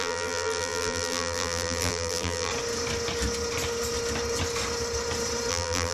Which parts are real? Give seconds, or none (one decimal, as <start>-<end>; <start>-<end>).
2.5-5.5